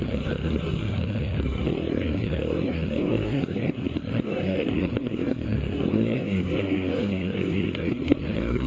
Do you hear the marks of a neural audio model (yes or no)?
yes